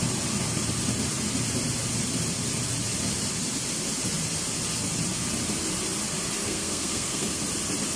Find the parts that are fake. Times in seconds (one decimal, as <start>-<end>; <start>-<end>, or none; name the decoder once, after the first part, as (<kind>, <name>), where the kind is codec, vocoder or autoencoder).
6.4-7.4 (codec, SNAC)